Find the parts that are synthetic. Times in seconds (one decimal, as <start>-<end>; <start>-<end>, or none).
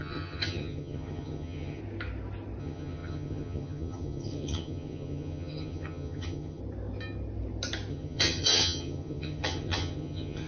0.0-1.8; 2.6-6.6; 7.9-10.5